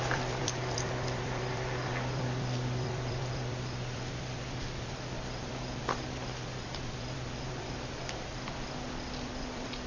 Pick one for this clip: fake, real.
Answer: fake